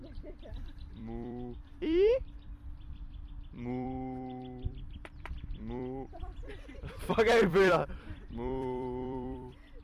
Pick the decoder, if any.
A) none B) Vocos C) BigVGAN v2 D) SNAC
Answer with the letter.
C